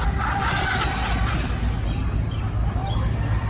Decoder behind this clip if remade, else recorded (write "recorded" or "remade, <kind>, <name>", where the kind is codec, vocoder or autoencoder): recorded